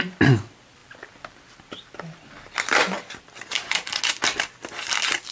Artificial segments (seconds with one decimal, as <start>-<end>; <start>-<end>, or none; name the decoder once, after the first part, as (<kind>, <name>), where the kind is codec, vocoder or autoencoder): 0.8-4.0 (vocoder, BigVGAN v2)